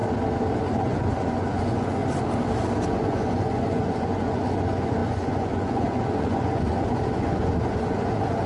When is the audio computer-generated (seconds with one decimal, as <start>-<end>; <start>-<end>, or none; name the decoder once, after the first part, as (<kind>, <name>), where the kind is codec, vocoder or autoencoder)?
0.7-2.0 (vocoder, Vocos); 2.9-8.5